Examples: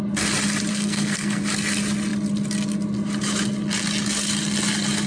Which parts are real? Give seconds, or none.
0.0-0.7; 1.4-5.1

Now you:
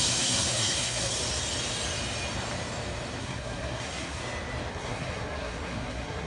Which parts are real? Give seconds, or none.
1.1-3.2; 4.2-4.7

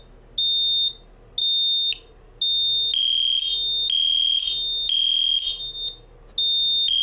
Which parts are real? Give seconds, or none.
0.0-7.0

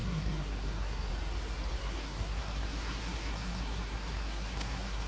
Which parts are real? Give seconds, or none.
1.1-1.8

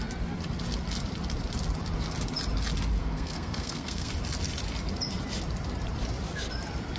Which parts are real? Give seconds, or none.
0.0-3.0; 4.1-7.0

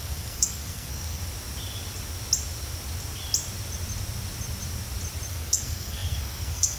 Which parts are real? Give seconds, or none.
1.2-5.3